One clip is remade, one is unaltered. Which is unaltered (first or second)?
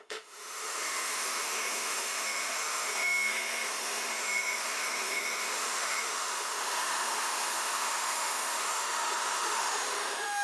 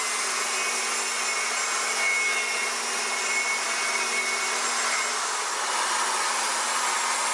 second